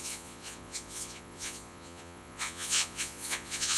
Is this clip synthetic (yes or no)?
yes